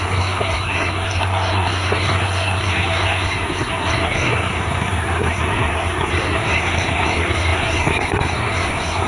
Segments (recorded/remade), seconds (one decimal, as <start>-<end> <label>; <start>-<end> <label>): 0.0-9.1 remade

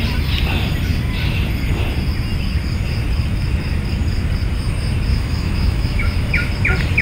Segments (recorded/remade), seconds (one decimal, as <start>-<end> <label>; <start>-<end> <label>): 0.0-5.1 recorded; 5.1-6.5 remade; 6.5-7.0 recorded

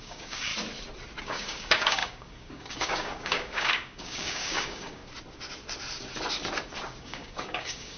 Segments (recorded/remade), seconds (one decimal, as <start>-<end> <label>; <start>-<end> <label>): 0.0-0.5 remade; 0.5-1.2 recorded; 1.2-5.0 remade; 5.0-7.0 recorded; 7.0-8.0 remade